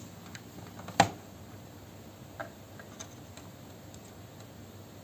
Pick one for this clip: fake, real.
real